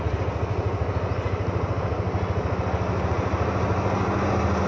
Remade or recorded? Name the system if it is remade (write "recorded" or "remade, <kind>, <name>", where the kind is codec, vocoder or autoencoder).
recorded